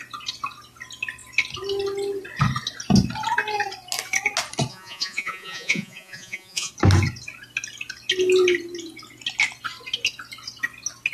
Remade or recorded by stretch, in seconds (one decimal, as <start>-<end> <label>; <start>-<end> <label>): 0.0-4.7 recorded; 4.7-6.7 remade; 6.7-11.1 recorded